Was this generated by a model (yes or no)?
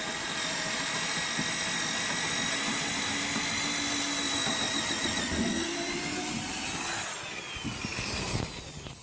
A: no